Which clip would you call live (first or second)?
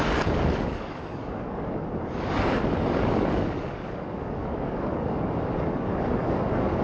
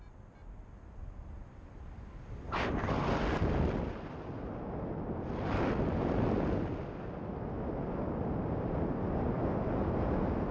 second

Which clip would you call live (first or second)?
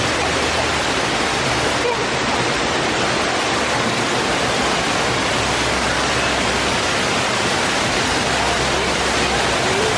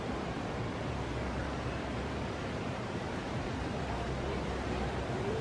first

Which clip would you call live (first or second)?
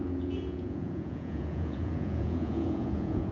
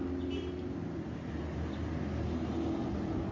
second